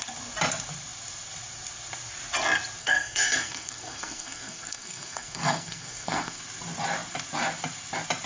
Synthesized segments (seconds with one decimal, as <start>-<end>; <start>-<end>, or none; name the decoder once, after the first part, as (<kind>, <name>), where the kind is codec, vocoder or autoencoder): 2.8-6.4 (codec, SNAC)